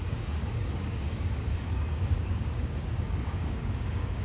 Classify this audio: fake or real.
fake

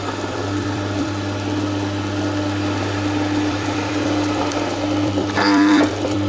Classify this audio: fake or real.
fake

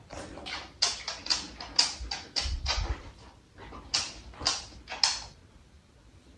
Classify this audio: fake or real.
real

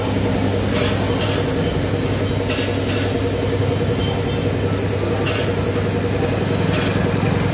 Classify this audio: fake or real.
real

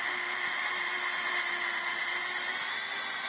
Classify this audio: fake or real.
real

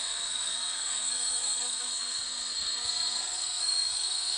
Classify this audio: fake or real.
fake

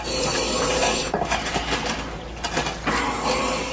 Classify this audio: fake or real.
real